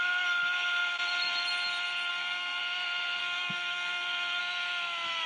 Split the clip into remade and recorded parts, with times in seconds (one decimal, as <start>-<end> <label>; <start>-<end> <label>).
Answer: 0.0-2.1 recorded; 2.1-2.6 remade; 2.6-3.2 recorded; 3.2-4.4 remade; 4.4-5.3 recorded